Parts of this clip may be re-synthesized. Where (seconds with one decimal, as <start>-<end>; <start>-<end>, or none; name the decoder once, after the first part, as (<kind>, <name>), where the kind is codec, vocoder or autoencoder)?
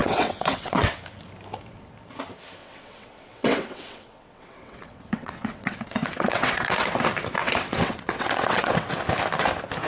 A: 0.0-1.0 (vocoder, WaveNeXt); 2.6-6.9; 7.4-8.9